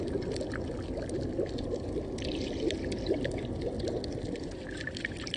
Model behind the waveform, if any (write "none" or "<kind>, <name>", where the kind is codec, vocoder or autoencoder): none